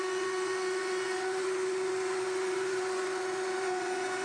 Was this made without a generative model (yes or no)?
no